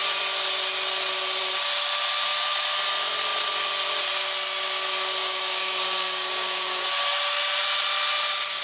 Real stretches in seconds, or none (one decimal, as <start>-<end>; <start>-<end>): 0.0-5.2; 6.8-8.6